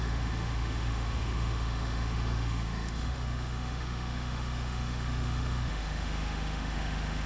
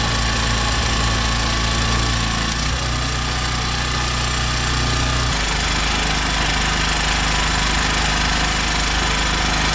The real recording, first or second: second